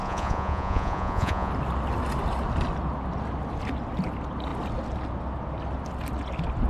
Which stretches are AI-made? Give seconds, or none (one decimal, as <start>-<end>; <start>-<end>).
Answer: 0.0-1.5